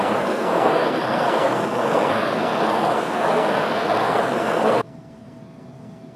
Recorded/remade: remade